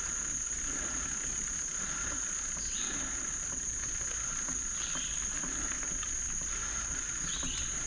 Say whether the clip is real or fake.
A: real